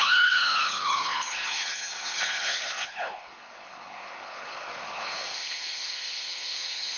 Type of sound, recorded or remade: remade